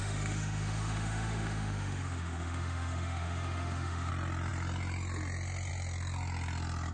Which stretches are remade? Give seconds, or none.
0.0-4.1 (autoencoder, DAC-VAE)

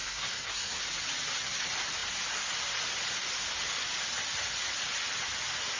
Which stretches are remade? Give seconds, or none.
0.0-0.8 (codec, SNAC)

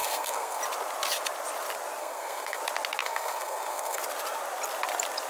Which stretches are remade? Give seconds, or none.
0.0-0.6 (codec, SNAC); 2.0-2.6; 3.0-4.0

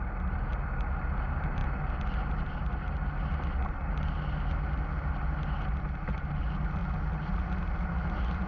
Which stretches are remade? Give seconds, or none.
none

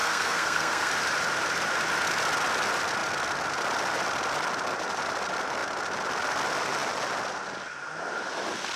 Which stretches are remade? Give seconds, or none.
0.0-0.9 (codec, SNAC)

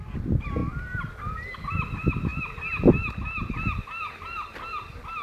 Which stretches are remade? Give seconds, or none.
none